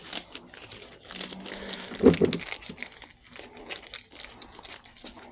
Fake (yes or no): no